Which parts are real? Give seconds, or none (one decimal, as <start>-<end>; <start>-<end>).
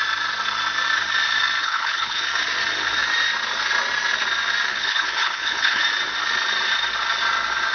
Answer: 0.0-1.6; 2.2-4.7; 5.8-7.7